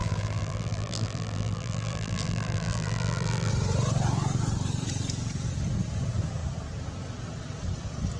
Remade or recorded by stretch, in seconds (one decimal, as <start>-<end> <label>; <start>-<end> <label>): 0.0-3.5 remade; 3.5-8.2 recorded